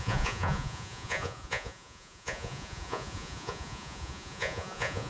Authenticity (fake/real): fake